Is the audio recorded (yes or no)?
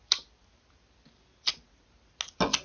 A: yes